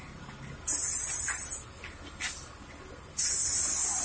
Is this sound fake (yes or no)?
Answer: no